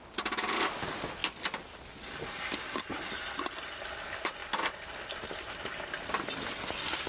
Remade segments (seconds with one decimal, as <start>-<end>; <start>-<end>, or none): none